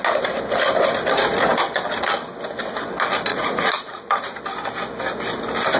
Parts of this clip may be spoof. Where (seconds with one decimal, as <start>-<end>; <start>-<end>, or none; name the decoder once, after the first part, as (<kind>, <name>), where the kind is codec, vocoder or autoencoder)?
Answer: 3.3-4.4 (vocoder, Vocos)